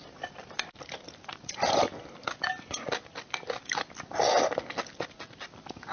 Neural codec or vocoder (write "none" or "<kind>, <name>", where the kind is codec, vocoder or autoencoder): none